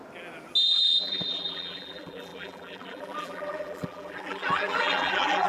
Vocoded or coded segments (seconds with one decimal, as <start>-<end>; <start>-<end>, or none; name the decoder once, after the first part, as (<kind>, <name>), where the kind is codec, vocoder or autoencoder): 0.6-5.5 (vocoder, BigVGAN v2)